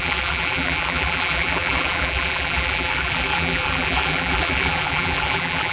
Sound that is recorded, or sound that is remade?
remade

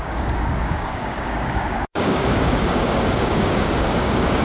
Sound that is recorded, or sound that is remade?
remade